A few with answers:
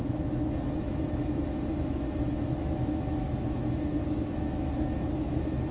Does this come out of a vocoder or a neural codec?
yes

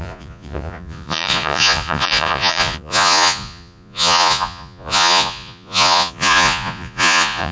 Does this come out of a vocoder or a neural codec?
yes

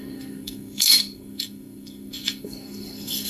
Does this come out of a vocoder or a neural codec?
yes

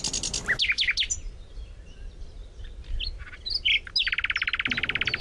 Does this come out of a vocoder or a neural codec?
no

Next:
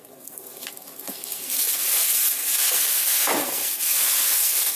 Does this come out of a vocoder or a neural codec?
yes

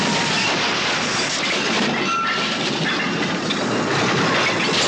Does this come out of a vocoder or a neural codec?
no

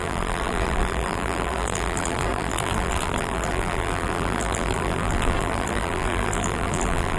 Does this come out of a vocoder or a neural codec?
yes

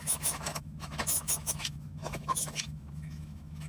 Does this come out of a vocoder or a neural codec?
yes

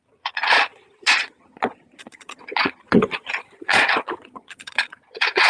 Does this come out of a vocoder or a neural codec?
yes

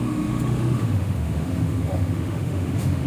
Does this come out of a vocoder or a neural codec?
yes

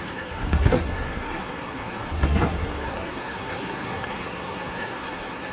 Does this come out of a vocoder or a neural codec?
yes